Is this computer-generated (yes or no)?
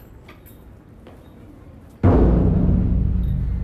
no